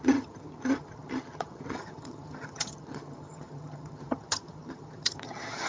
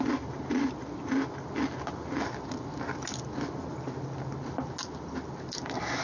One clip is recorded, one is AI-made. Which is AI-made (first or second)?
first